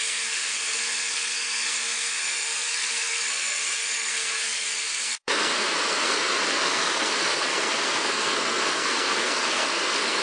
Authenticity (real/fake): fake